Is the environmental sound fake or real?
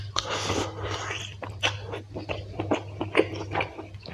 real